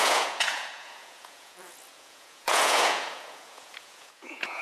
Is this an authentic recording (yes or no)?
no